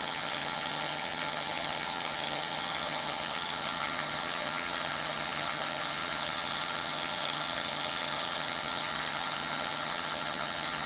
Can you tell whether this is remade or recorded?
remade